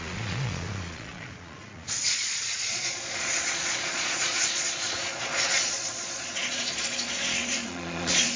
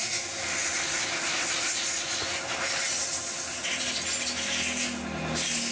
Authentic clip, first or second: second